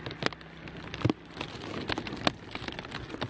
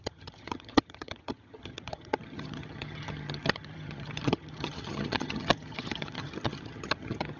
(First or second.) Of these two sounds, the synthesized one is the second